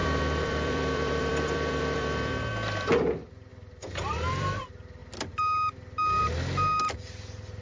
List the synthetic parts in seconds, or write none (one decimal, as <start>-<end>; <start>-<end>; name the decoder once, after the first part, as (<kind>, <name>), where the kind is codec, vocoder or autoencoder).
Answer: 0.0-2.5 (vocoder, BigVGAN v2); 3.5-4.6